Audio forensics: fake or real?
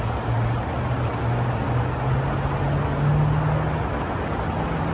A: real